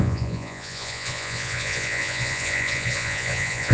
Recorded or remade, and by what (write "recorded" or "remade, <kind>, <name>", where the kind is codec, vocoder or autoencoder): remade, vocoder, Vocos